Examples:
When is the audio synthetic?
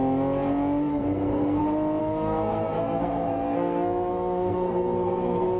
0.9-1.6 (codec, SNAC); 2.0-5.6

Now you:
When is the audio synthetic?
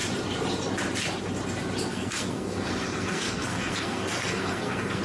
1.9-5.0 (codec, SNAC)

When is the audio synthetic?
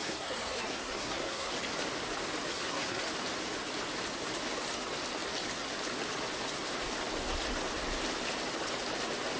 0.0-1.5 (codec, SNAC); 2.5-3.0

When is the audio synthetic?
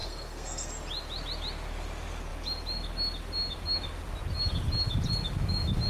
0.0-0.7 (codec, SNAC)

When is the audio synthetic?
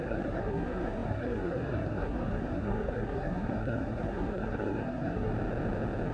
0.0-5.3 (codec, SNAC)